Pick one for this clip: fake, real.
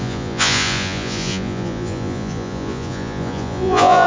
fake